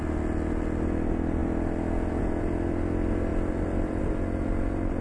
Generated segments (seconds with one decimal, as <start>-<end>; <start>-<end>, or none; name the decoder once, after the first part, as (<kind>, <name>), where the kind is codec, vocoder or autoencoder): none